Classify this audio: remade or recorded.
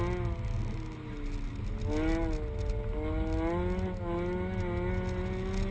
recorded